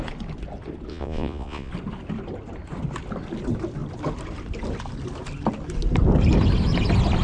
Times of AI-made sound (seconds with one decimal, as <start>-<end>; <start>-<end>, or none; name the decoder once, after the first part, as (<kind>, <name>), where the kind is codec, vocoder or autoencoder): 0.9-1.7 (vocoder, Vocos)